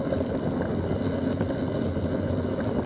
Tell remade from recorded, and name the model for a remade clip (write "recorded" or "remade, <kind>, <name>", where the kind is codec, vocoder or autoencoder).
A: recorded